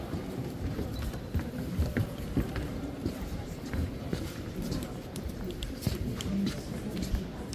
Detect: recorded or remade remade